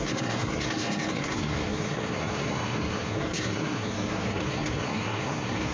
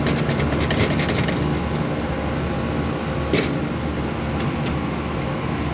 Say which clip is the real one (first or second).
second